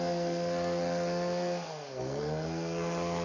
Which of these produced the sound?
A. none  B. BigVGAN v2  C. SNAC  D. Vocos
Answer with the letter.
C